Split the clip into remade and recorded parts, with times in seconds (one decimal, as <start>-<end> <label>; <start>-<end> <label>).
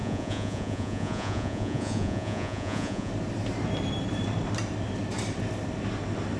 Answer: 0.0-3.1 remade; 3.1-6.4 recorded